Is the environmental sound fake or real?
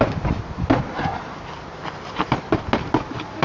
real